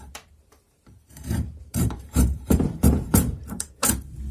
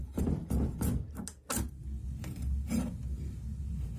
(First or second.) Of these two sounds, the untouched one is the second